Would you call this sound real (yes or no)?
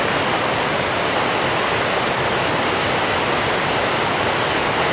yes